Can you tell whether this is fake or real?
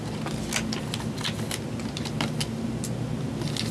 real